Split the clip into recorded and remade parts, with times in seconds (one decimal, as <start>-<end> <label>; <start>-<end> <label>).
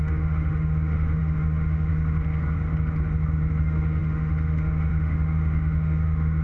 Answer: 0.0-1.9 remade; 1.9-3.6 recorded; 3.6-6.4 remade